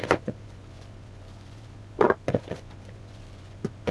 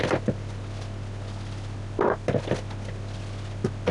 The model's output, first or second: first